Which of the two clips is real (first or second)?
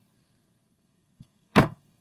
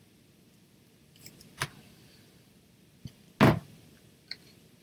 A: second